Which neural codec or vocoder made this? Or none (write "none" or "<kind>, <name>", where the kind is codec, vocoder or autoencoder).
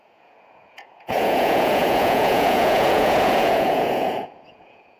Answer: vocoder, Vocos